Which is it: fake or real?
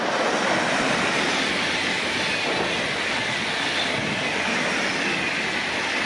real